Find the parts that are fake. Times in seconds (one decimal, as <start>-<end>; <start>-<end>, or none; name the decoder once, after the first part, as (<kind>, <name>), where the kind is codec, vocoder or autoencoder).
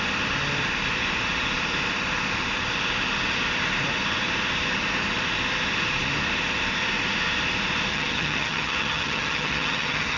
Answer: 7.9-10.2 (vocoder, HiFi-GAN)